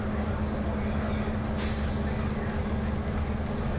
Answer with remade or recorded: recorded